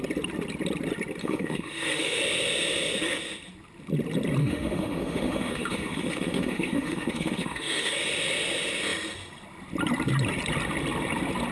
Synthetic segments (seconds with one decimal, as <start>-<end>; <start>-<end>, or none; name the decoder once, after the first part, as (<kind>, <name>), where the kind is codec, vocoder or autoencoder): 1.2-2.2 (autoencoder, DAC-VAE); 4.4-8.0